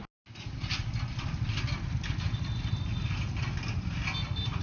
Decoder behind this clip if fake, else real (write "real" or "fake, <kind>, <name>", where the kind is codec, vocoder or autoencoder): real